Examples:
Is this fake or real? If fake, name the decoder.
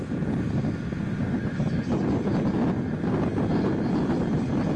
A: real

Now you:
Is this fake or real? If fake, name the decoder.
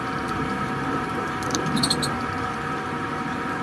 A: fake, vocoder, BigVGAN v2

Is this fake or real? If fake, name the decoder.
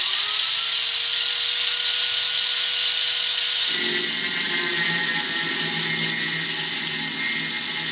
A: real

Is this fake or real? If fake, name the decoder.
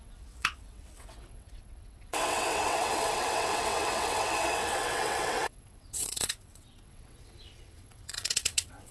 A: fake, vocoder, WaveNeXt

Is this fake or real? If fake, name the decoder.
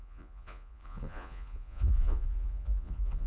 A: fake, vocoder, Vocos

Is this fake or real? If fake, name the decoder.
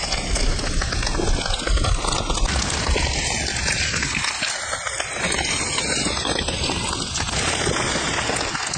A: real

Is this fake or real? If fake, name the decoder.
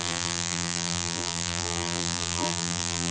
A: fake, vocoder, BigVGAN v2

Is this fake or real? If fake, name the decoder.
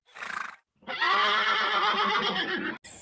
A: real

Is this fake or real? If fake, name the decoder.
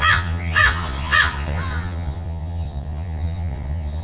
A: fake, vocoder, Vocos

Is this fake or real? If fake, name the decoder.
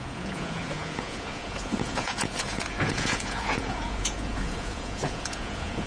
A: fake, vocoder, Vocos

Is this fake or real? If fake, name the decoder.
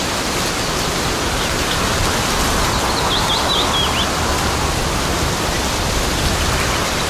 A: real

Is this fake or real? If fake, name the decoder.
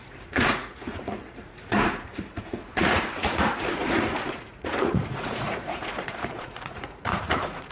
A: fake, vocoder, Vocos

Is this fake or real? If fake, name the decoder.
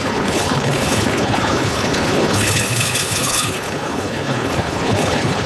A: fake, codec, HILCodec